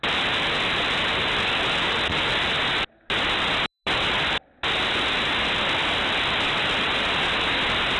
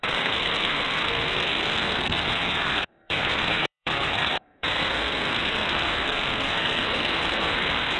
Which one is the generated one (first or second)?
second